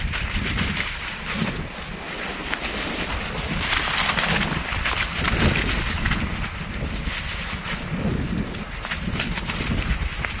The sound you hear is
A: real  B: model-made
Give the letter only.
A